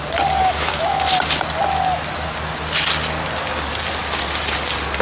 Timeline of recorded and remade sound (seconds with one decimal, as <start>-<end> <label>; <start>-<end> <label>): 0.0-0.4 recorded; 0.4-1.0 remade; 1.0-5.0 recorded

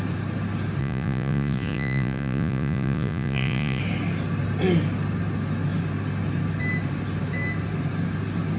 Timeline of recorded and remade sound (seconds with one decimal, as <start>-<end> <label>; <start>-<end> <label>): 0.0-0.8 recorded; 0.8-3.8 remade; 3.8-8.6 recorded